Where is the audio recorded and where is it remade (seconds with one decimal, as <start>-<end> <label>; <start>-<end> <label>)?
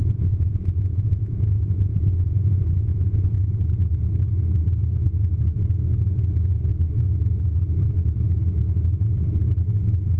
0.0-3.5 remade; 3.5-10.2 recorded